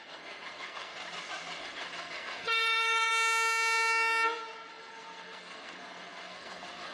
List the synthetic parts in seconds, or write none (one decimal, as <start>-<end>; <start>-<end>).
0.0-0.9; 1.6-3.1; 4.7-6.9

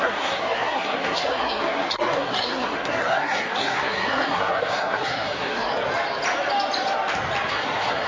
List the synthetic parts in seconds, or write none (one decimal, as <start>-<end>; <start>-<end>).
0.0-5.7; 7.5-8.1

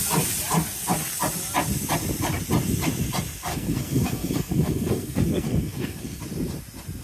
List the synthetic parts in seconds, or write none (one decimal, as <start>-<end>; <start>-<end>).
3.5-6.2

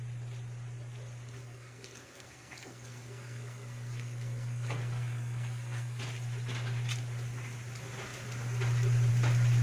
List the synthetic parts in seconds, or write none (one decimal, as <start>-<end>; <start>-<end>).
1.4-6.0